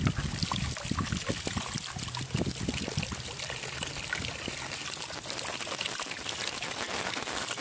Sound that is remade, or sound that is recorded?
recorded